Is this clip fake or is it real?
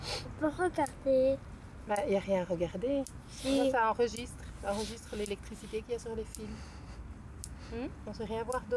real